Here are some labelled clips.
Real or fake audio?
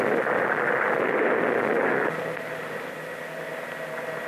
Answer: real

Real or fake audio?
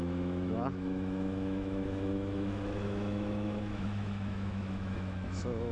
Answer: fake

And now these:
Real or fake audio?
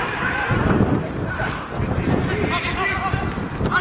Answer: real